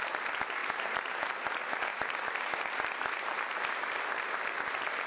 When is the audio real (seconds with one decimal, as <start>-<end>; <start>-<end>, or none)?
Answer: 0.0-0.6; 1.3-5.1